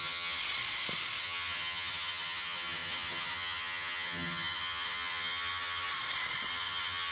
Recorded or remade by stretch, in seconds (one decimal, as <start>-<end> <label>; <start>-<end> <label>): 0.0-0.4 remade; 0.4-1.2 recorded; 1.2-5.9 remade; 5.9-6.5 recorded; 6.5-7.1 remade